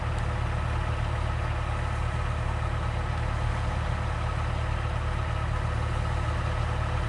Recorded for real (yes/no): yes